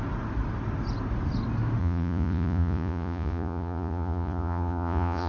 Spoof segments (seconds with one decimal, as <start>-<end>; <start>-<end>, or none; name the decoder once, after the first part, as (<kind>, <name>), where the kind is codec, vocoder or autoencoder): 1.8-5.3 (vocoder, Vocos)

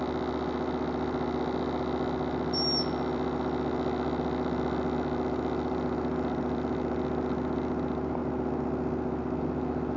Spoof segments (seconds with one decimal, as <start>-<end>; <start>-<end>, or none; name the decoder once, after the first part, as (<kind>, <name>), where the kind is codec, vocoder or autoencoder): none

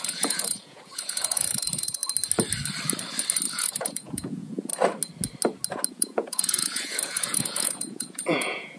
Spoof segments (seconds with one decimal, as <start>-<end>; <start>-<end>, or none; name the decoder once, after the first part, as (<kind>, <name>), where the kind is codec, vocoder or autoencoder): 0.0-2.0 (vocoder, Vocos); 3.5-4.7; 5.9-8.8

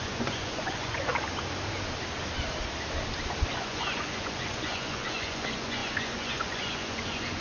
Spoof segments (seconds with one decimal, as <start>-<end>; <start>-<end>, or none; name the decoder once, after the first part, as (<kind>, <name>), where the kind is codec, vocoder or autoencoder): 0.0-1.1 (vocoder, Vocos); 3.5-7.4

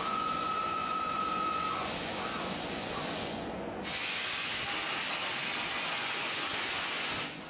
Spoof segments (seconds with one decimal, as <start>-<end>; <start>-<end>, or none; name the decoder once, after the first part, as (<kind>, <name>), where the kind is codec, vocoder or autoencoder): 0.0-4.5 (vocoder, Vocos); 5.7-7.5

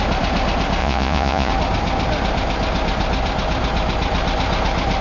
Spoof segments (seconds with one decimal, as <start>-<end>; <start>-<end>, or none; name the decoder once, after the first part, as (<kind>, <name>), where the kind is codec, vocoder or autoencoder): 0.8-1.5 (vocoder, Vocos)